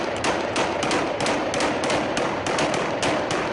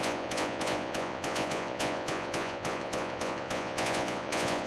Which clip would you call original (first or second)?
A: first